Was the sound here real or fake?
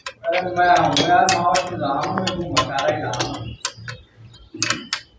real